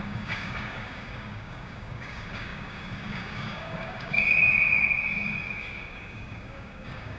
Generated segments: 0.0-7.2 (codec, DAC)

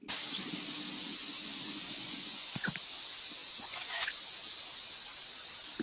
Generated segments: 1.1-2.7 (vocoder, Vocos); 3.4-4.1

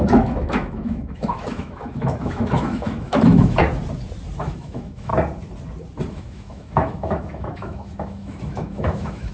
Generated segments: 0.0-3.6 (autoencoder, DAC-VAE); 4.4-5.1; 6.1-9.3

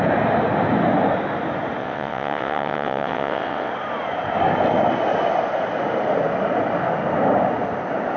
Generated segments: 1.8-3.7 (vocoder, WaveNeXt)

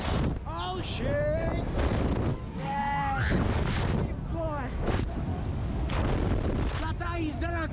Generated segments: 2.3-2.8 (codec, DAC); 5.3-6.0

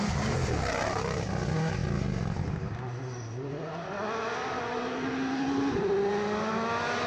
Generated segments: none